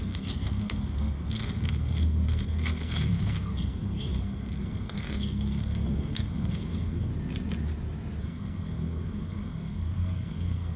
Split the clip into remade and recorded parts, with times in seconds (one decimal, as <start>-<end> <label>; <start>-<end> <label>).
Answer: 0.0-7.1 remade; 7.1-8.2 recorded; 8.2-10.8 remade